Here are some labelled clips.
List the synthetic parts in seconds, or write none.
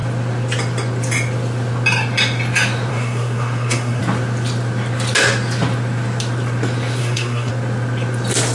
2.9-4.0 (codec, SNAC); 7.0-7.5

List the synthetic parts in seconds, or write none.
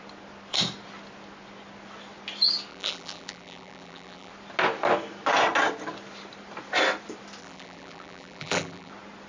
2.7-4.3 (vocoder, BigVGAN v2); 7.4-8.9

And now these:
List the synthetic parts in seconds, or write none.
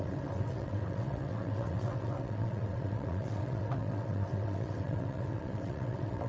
0.0-6.3 (vocoder, WaveNeXt)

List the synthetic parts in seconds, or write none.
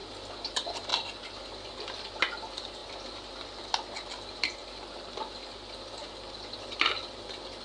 none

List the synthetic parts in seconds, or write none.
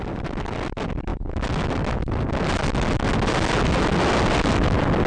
none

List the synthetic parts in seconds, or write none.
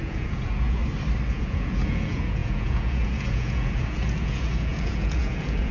0.0-0.8 (vocoder, Vocos); 1.3-5.7